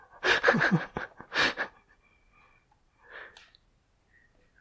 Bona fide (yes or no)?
yes